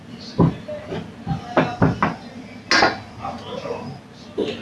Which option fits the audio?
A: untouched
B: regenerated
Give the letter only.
A